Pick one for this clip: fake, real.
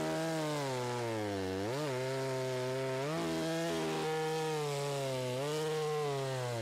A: real